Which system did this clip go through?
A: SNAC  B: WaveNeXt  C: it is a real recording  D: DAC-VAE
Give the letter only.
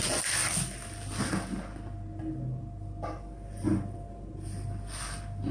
C